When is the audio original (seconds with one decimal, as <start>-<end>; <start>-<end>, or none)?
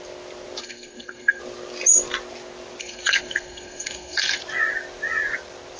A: 0.0-0.6; 1.4-2.8; 4.4-5.8